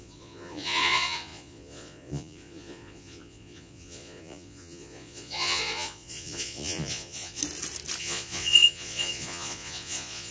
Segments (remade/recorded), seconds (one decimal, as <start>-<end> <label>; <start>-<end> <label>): 0.0-7.4 remade; 7.4-8.0 recorded; 8.0-10.3 remade